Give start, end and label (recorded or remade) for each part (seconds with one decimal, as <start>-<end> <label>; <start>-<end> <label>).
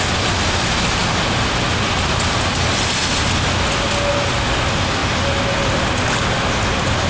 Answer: 0.0-7.1 recorded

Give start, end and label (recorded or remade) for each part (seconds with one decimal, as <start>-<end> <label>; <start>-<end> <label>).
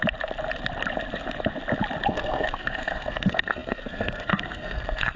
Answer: 0.0-2.1 recorded; 2.1-5.2 remade